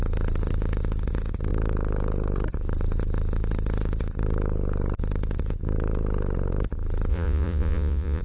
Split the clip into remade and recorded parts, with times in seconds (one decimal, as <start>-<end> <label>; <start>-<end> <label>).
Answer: 0.0-7.1 recorded; 7.1-8.2 remade